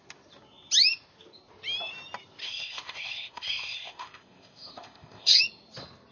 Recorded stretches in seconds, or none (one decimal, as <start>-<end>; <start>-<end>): 0.0-2.4; 5.4-6.1